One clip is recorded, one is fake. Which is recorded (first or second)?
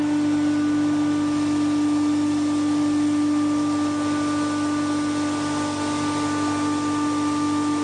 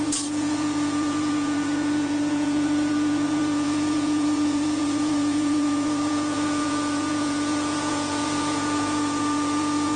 first